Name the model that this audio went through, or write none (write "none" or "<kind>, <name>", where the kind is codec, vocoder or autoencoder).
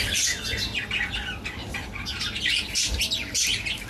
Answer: none